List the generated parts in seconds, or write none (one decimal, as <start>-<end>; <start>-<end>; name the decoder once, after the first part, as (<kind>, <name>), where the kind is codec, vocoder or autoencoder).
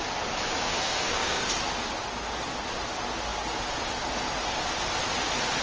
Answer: 0.6-1.5 (codec, SNAC)